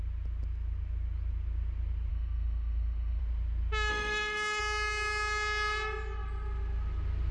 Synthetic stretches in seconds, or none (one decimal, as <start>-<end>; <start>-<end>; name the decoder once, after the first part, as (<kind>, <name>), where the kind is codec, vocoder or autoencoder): 2.1-3.2 (autoencoder, DAC-VAE); 3.9-4.6